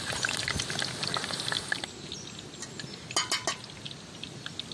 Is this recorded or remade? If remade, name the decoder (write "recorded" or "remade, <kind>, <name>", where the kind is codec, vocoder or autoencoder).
recorded